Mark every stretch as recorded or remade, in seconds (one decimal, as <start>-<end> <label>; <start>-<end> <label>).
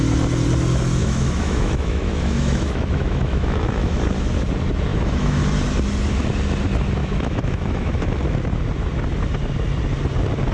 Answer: 0.0-1.0 recorded; 1.0-4.0 remade; 4.0-4.9 recorded; 4.9-5.4 remade; 5.4-7.0 recorded; 7.0-8.1 remade; 8.1-10.5 recorded